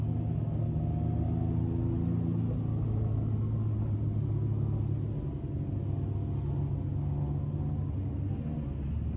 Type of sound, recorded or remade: recorded